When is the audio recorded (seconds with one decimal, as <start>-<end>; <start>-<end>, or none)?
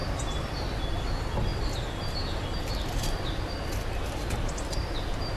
0.0-5.4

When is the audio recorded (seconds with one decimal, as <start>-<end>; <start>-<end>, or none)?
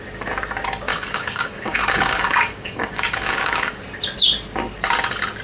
0.0-0.9; 3.8-5.4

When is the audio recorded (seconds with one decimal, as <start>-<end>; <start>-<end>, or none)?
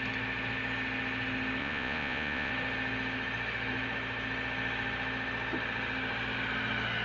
0.0-1.6; 2.5-7.0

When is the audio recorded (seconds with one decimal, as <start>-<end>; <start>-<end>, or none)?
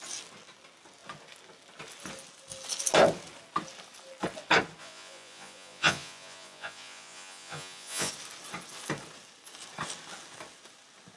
0.0-4.8; 8.1-11.2